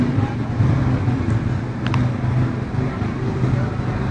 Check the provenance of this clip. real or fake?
real